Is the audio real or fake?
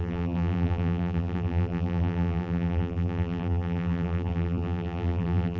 fake